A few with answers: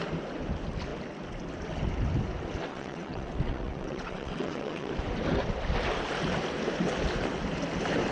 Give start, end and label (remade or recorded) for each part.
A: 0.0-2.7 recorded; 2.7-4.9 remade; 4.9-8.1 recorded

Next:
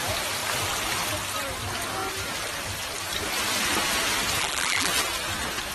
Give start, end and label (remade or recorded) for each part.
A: 0.0-4.4 recorded; 4.4-4.9 remade; 4.9-5.7 recorded

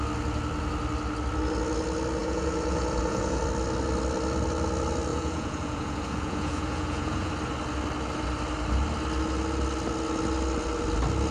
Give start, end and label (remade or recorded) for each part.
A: 0.0-2.2 recorded; 2.2-3.4 remade; 3.4-5.1 recorded; 5.1-7.3 remade; 7.3-11.3 recorded

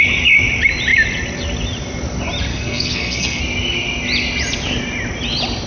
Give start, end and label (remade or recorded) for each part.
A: 0.0-2.5 recorded; 2.5-3.4 remade; 3.4-5.7 recorded

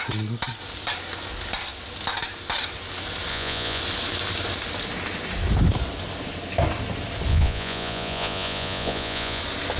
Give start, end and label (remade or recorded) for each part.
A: 0.0-3.3 recorded; 3.3-3.8 remade; 3.8-7.3 recorded; 7.3-9.4 remade; 9.4-9.8 recorded

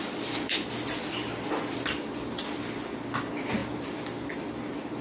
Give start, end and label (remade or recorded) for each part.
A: 0.0-5.0 recorded

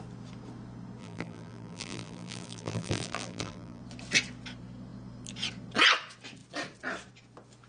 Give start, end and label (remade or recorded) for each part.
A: 0.0-1.0 recorded; 1.0-3.8 remade; 3.8-7.7 recorded